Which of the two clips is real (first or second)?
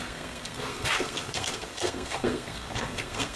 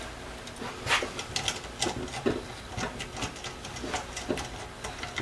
second